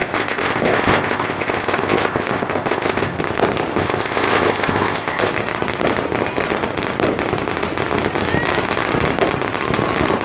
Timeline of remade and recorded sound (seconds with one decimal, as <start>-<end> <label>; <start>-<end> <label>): 0.0-3.2 remade; 3.2-3.7 recorded; 3.7-5.3 remade; 5.3-10.2 recorded